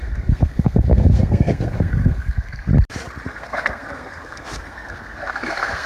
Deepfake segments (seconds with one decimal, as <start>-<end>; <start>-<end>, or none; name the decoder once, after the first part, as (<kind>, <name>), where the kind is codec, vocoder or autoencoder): 0.0-2.7 (codec, SNAC); 3.3-5.9